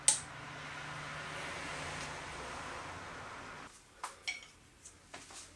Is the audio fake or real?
real